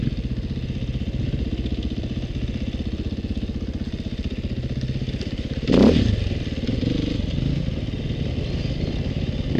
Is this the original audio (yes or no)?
yes